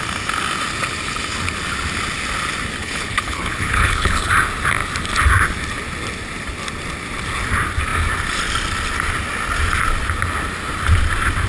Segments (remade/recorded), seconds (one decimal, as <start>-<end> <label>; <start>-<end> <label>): 0.0-2.8 recorded; 2.8-4.3 remade; 4.3-11.5 recorded